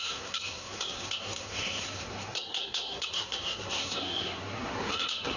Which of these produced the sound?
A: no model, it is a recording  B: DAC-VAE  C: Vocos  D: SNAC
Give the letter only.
D